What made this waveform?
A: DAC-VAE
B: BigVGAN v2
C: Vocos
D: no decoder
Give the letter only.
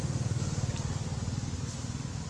D